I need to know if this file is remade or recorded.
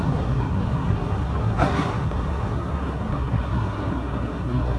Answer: remade